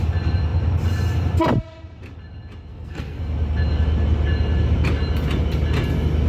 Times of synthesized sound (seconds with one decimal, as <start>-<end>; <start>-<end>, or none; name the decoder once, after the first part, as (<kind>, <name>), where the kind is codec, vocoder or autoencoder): 2.7-3.2 (codec, SNAC)